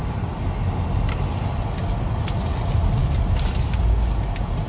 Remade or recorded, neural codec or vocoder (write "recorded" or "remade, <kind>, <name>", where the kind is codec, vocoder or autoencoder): recorded